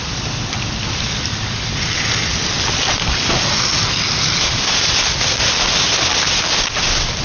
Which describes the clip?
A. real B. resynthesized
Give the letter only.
A